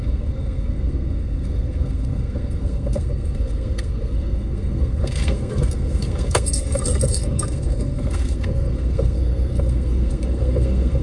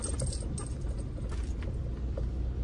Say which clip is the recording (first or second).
second